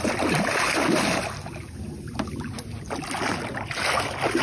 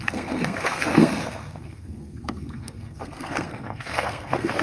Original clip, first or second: first